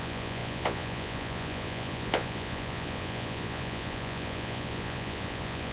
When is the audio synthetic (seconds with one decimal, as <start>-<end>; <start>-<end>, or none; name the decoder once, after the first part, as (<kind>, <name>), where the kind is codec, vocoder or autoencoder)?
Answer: 0.0-5.7 (vocoder, Vocos)